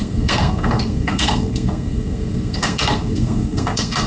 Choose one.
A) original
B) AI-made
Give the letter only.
B